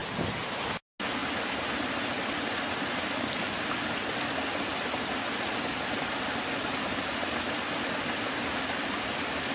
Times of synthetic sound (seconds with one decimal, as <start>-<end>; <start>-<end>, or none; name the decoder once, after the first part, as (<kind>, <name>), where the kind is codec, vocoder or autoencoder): none